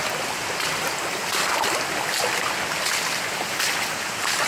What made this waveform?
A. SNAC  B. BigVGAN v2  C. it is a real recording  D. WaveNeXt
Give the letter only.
C